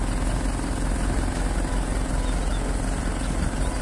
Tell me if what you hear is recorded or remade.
recorded